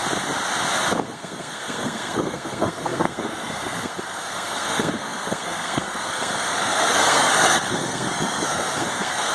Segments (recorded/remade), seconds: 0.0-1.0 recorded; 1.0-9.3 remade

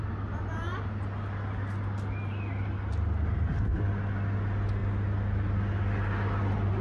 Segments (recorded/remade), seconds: 0.0-6.8 recorded

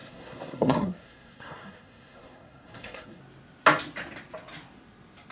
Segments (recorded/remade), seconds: 0.0-3.2 remade; 3.2-5.3 recorded

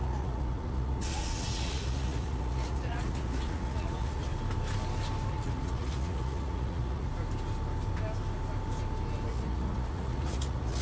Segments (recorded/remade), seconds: 0.0-4.3 remade; 4.3-5.3 recorded; 5.3-7.1 remade; 7.1-9.3 recorded; 9.3-10.8 remade

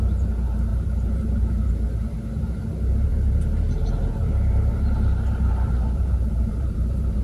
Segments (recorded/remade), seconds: 0.0-0.7 recorded; 0.7-1.7 remade; 1.7-3.1 recorded; 3.1-7.2 remade

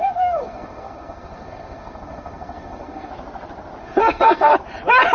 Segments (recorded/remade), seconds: 0.0-3.1 remade; 3.1-3.8 recorded; 3.8-4.5 remade; 4.5-5.1 recorded

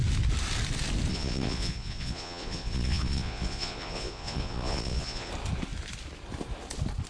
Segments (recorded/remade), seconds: 0.0-1.1 recorded; 1.1-5.3 remade; 5.3-7.1 recorded